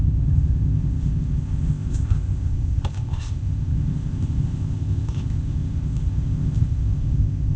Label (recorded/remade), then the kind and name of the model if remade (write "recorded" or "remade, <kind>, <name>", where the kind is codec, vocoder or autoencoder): remade, codec, ZipCodec